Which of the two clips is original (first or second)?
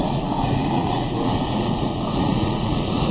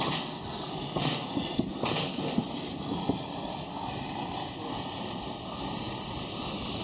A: second